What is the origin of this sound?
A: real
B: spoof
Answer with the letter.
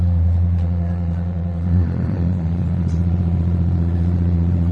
B